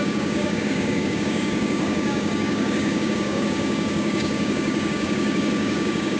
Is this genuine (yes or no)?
no